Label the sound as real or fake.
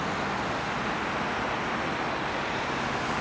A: real